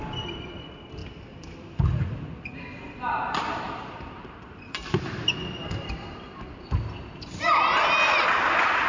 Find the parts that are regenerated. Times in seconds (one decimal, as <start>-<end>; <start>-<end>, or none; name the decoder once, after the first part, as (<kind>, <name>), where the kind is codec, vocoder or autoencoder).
none